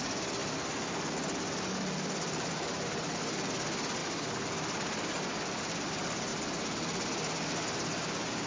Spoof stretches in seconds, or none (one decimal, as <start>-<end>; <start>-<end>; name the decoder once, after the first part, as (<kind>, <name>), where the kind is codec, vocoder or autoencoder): none